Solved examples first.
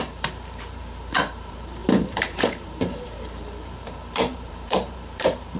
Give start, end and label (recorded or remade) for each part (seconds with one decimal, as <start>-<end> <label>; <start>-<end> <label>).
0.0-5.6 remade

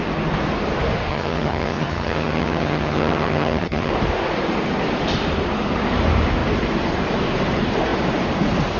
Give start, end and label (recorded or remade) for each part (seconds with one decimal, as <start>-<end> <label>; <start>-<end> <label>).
0.0-1.1 recorded; 1.1-3.9 remade; 3.9-8.8 recorded

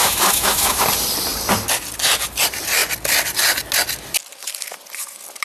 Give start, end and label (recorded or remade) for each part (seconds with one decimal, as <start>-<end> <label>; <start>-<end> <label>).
0.0-0.8 remade; 0.8-5.4 recorded